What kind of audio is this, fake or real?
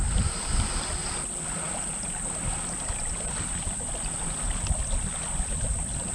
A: real